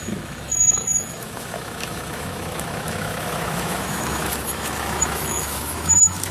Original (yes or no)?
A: no